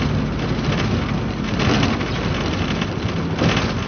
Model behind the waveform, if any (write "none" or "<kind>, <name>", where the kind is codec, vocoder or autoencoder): none